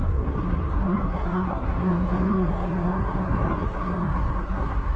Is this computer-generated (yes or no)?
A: yes